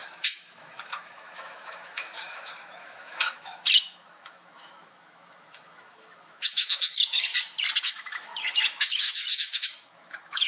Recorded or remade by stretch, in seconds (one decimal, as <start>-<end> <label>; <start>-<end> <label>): 0.0-7.3 remade; 7.3-7.8 recorded; 7.8-10.5 remade